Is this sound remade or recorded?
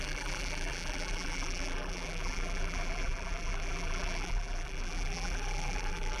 remade